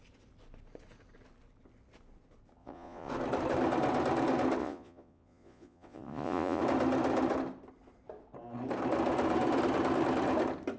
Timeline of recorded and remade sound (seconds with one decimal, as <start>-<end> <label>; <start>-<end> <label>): 0.0-2.6 recorded; 2.6-3.1 remade; 3.1-4.6 recorded; 4.6-6.6 remade; 6.6-10.8 recorded